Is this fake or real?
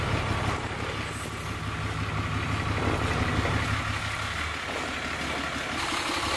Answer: real